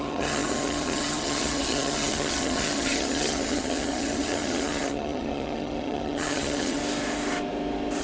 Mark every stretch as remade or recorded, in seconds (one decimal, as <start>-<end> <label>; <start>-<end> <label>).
0.0-6.8 remade; 6.8-8.0 recorded